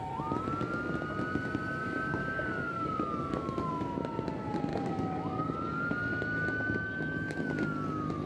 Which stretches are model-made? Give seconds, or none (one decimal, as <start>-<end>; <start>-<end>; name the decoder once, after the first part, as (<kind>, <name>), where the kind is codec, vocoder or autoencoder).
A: 1.8-3.7 (codec, DAC); 4.7-5.9